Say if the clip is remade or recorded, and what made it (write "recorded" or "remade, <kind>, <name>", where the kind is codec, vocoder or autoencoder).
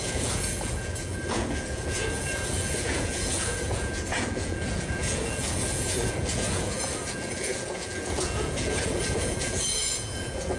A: remade, vocoder, Vocos